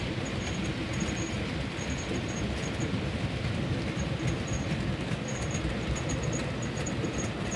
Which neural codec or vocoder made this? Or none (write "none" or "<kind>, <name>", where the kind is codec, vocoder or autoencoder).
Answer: none